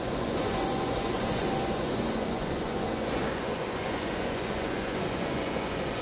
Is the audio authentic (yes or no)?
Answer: no